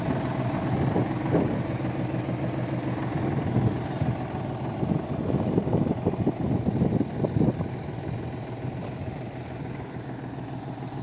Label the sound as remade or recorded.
recorded